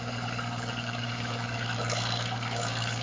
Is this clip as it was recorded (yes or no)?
no